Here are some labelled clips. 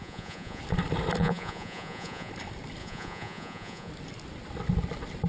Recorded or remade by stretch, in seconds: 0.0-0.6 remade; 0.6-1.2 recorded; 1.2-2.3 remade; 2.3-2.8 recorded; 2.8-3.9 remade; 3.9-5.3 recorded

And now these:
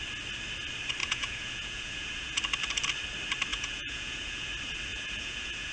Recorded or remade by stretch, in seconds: 0.0-1.0 recorded; 1.0-2.4 remade; 2.4-3.5 recorded; 3.5-4.5 remade; 4.5-4.9 recorded; 4.9-5.7 remade

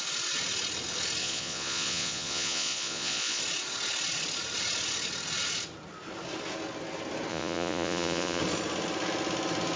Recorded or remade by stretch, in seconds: 0.0-1.2 recorded; 1.2-3.4 remade; 3.4-7.3 recorded; 7.3-8.4 remade; 8.4-9.8 recorded

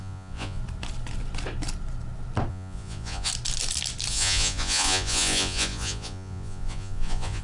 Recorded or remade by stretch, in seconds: 0.0-0.6 remade; 0.6-2.5 recorded; 2.5-3.3 remade; 3.3-4.1 recorded; 4.1-7.4 remade

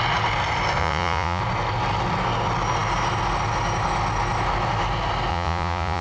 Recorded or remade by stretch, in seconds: 0.0-0.8 recorded; 0.8-1.4 remade; 1.4-5.3 recorded; 5.3-6.0 remade

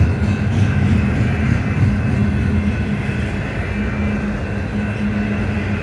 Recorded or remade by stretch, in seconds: 0.0-5.8 recorded

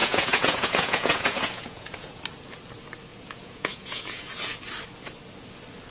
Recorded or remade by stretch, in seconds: 0.0-2.2 remade; 2.2-3.1 recorded; 3.1-4.6 remade; 4.6-5.9 recorded